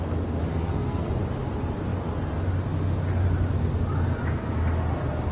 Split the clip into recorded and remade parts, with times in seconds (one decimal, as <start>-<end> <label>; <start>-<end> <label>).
0.0-0.5 recorded; 0.5-1.1 remade; 1.1-5.3 recorded